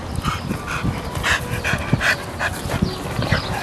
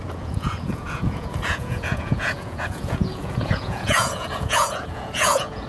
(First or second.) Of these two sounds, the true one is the first